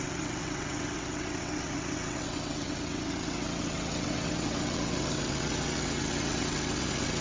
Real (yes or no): no